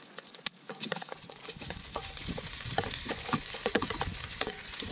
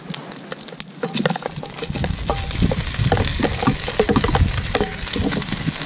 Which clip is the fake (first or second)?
first